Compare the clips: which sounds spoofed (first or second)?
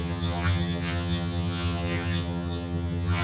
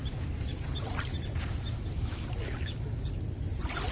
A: first